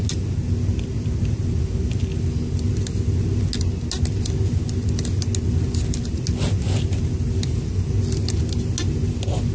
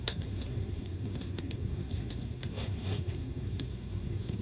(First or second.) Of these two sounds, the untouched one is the first